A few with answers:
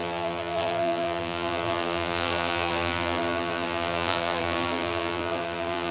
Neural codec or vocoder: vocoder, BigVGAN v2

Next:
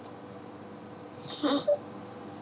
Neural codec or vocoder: none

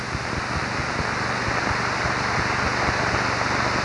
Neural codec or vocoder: none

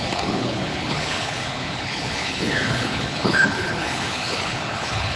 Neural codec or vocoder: codec, HILCodec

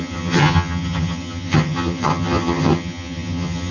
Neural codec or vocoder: vocoder, HiFi-GAN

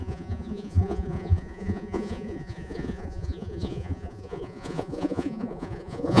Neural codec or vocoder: vocoder, Vocos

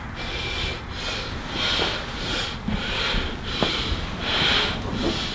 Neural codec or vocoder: none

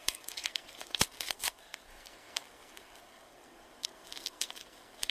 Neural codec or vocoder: codec, SNAC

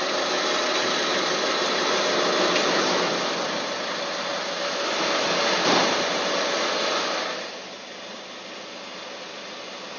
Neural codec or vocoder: none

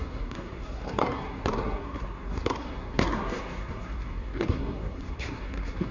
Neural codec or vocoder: codec, SNAC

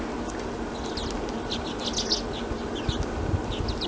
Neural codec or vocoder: none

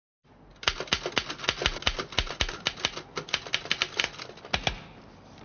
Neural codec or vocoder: none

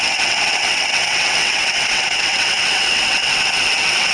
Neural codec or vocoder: vocoder, WaveNeXt